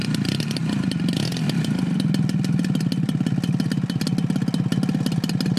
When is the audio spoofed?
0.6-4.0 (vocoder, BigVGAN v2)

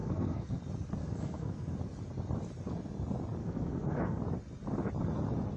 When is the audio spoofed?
0.0-0.6 (codec, SNAC); 1.0-1.7; 3.4-4.2

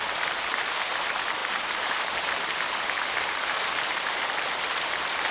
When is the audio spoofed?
none

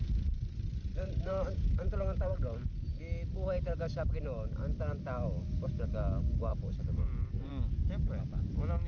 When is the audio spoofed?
0.9-1.6 (vocoder, BigVGAN v2); 6.5-7.5

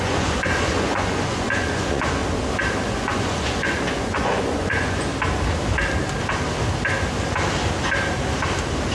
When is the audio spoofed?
0.0-2.2 (vocoder, Vocos); 2.9-5.1